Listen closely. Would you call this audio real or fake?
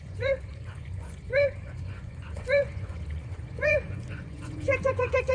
fake